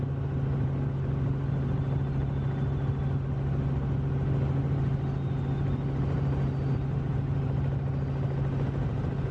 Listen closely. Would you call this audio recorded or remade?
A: recorded